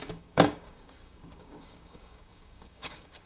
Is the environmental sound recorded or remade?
remade